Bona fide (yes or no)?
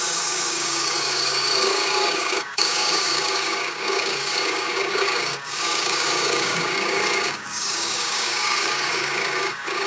no